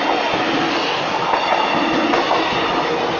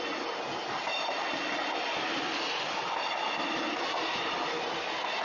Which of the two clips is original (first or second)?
first